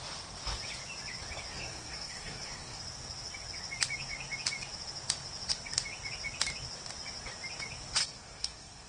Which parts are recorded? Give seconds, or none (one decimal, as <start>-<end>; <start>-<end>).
0.0-1.5; 2.8-8.0